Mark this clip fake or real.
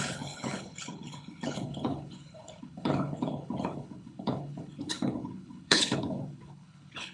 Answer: fake